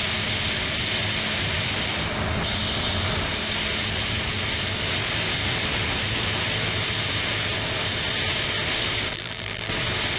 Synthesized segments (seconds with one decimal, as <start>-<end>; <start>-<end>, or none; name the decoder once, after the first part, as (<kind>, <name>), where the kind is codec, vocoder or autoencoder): 9.1-9.7 (vocoder, BigVGAN v2)